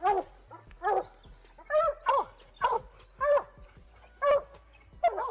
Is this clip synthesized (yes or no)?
no